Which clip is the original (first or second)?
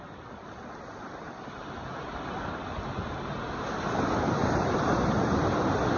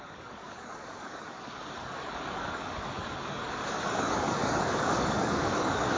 first